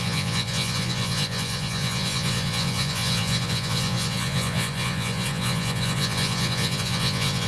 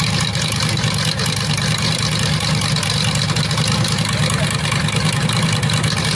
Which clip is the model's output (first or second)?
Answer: first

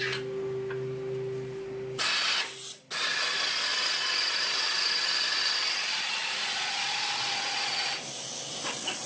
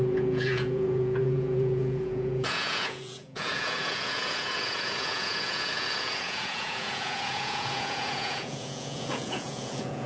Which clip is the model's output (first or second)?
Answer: second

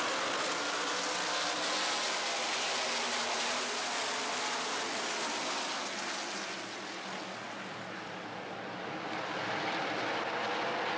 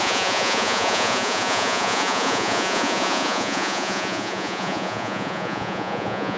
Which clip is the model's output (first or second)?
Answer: second